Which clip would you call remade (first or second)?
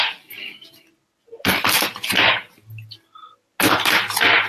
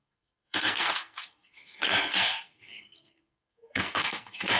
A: second